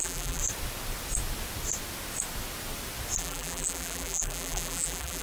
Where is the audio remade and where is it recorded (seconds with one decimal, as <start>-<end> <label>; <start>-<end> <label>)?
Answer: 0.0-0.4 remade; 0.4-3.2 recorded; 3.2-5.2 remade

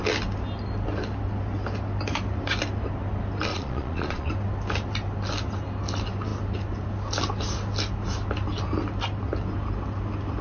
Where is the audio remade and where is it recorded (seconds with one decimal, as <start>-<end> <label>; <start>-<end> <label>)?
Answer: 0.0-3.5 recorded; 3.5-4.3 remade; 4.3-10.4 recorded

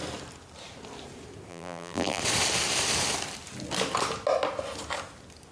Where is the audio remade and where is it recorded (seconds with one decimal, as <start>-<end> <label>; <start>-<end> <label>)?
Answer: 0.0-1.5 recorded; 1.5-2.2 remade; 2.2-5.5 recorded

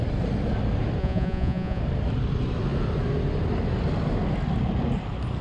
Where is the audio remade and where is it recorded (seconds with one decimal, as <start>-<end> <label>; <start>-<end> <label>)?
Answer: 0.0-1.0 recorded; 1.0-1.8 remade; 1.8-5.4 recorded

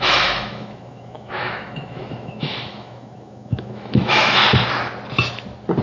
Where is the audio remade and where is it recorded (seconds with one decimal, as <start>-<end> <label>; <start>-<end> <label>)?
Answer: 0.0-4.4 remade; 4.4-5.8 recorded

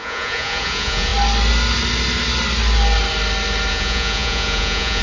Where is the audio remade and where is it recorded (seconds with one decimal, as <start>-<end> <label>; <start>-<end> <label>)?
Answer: 0.0-1.1 remade; 1.1-3.7 recorded; 3.7-5.0 remade

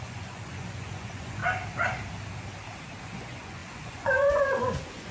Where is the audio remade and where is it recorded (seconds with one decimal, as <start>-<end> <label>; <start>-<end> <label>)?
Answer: 0.0-1.4 remade; 1.4-3.0 recorded; 3.0-5.1 remade